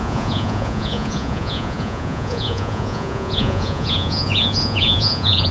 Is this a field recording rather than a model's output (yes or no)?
no